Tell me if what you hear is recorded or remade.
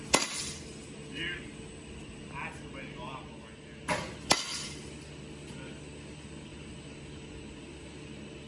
recorded